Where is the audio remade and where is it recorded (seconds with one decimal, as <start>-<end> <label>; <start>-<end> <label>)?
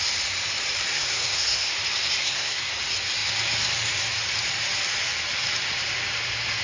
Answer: 0.0-0.9 recorded; 0.9-1.7 remade; 1.7-2.2 recorded; 2.2-2.7 remade; 2.7-6.6 recorded